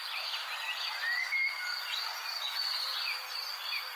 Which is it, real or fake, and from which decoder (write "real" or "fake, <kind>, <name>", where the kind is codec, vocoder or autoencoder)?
real